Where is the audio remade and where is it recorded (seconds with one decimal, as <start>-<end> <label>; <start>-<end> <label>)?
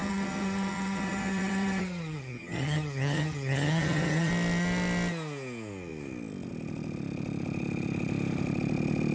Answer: 0.0-4.3 remade; 4.3-9.1 recorded